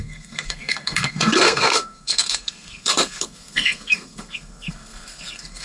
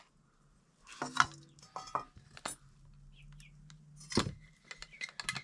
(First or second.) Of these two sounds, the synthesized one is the first